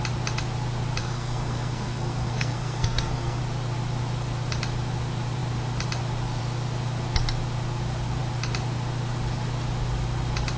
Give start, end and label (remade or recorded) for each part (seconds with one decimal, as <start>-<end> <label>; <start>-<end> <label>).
0.0-1.0 recorded; 1.0-3.4 remade; 3.4-10.6 recorded